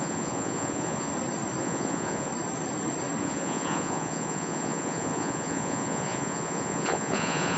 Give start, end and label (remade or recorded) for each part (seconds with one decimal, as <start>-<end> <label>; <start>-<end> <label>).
0.0-1.1 remade; 1.1-1.6 recorded; 1.6-2.3 remade; 2.3-3.2 recorded; 3.2-7.6 remade